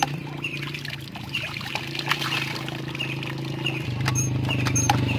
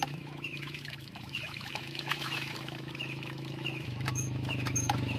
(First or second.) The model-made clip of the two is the second